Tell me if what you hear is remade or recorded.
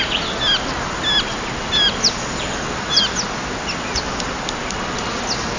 recorded